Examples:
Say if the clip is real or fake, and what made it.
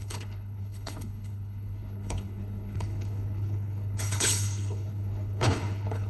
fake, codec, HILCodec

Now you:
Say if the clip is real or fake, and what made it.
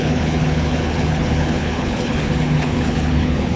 fake, codec, HILCodec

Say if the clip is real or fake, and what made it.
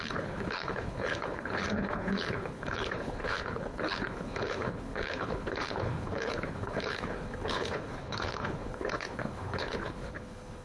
fake, codec, HILCodec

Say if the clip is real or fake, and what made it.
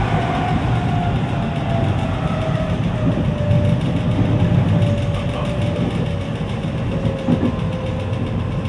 real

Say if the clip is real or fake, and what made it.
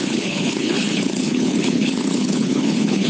fake, codec, HILCodec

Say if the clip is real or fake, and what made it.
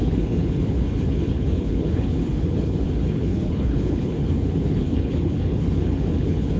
fake, codec, HILCodec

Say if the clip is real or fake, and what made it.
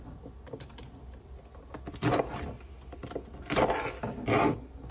real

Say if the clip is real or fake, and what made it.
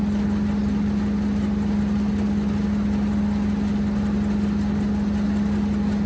real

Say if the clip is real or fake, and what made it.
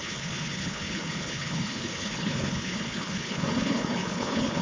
fake, codec, HILCodec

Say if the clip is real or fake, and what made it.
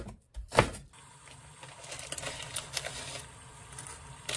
real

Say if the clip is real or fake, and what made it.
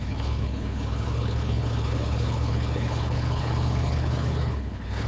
fake, codec, HILCodec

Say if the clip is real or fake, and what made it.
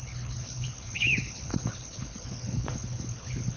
fake, codec, HILCodec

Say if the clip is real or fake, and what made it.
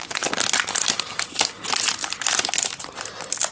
real